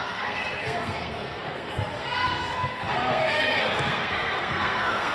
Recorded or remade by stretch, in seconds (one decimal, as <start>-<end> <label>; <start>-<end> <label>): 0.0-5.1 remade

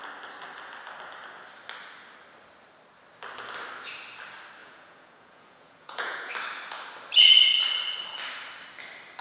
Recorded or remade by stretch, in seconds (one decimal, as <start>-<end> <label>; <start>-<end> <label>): 0.0-4.6 recorded; 4.6-6.3 remade; 6.3-9.2 recorded

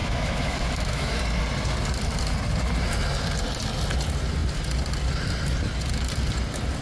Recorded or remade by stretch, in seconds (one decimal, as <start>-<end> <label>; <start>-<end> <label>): 0.0-1.2 remade; 1.2-6.8 recorded

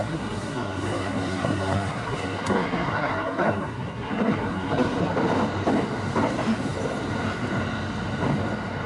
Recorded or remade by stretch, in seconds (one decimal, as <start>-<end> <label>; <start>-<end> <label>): 0.0-5.0 remade; 5.0-8.9 recorded

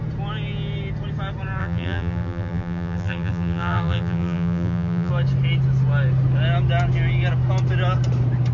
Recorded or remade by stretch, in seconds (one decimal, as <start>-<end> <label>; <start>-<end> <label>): 0.0-1.6 recorded; 1.6-5.1 remade; 5.1-8.5 recorded

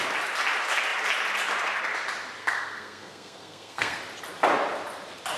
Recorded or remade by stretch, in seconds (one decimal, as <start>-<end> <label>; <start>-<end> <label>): 0.0-2.4 recorded; 2.4-4.0 remade; 4.0-5.4 recorded

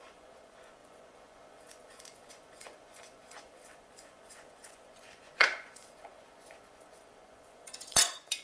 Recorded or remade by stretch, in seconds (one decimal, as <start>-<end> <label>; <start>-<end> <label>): 0.0-8.4 remade

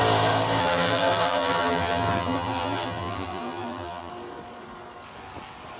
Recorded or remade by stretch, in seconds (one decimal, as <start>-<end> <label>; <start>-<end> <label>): 0.0-0.6 recorded; 0.6-4.1 remade; 4.1-5.8 recorded